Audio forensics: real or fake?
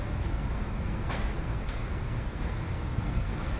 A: fake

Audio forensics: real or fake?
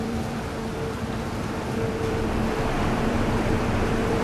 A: fake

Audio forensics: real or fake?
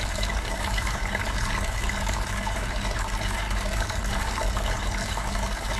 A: fake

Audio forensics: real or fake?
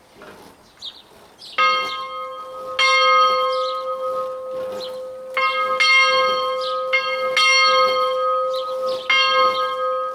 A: real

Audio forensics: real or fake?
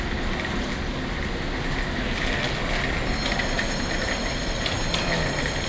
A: real